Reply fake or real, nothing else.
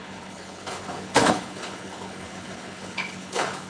fake